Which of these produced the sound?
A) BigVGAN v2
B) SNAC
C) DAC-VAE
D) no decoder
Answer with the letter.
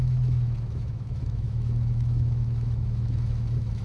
C